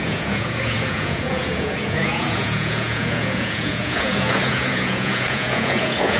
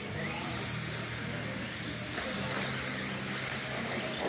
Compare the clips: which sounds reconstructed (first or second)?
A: first